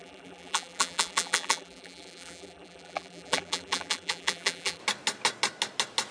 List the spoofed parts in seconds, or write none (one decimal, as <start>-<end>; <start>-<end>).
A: 0.0-4.8